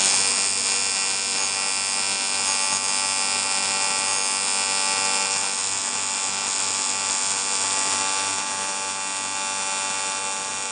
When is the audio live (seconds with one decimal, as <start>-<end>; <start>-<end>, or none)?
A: 0.0-10.7